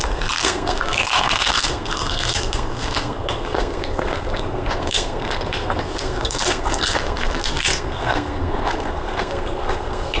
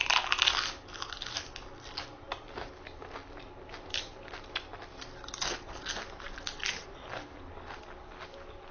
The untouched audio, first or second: second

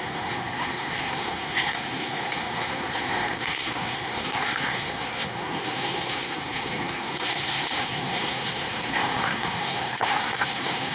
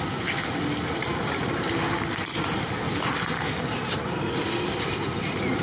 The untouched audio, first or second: second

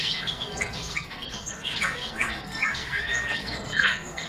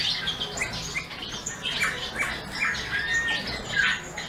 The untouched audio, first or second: second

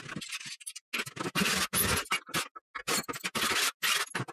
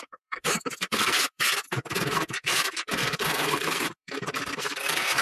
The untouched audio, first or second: first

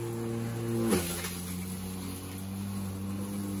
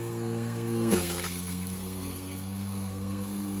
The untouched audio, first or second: first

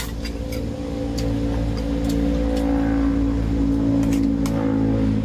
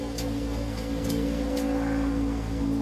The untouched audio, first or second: first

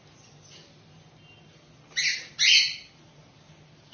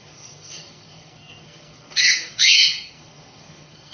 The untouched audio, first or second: first